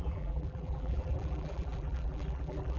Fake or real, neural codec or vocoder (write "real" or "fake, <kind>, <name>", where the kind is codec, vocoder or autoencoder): fake, vocoder, BigVGAN v2